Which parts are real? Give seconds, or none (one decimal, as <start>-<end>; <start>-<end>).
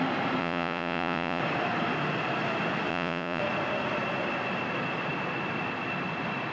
0.0-0.4; 1.4-2.9; 3.4-6.5